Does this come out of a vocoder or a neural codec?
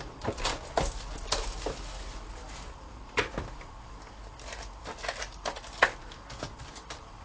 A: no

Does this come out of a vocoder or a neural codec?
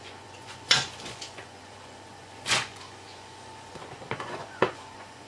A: yes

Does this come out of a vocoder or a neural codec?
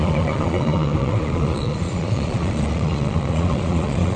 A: yes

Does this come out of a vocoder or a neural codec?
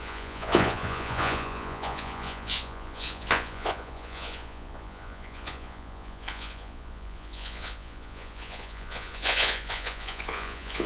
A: yes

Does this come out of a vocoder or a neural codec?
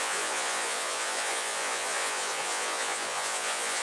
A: yes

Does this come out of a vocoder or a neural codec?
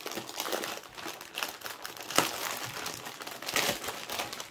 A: no